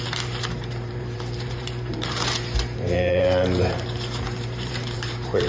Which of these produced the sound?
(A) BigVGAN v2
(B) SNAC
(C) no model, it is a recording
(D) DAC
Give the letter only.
A